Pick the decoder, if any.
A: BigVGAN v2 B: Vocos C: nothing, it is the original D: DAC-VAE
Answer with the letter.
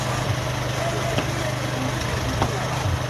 C